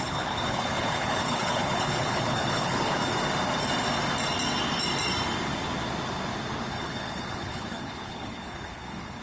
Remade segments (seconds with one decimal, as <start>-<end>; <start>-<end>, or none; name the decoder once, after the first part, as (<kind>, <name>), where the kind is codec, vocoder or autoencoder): 0.0-3.0 (codec, HILCodec); 6.7-9.2